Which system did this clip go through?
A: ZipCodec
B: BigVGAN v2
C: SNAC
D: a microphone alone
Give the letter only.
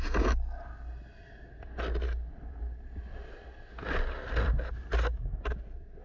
D